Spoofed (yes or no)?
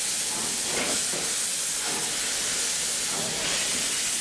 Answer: no